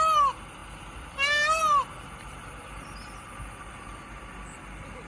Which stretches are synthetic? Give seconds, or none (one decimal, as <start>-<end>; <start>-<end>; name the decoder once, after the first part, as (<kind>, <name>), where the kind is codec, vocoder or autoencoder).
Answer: none